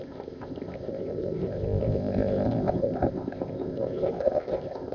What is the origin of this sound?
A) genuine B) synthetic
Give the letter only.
B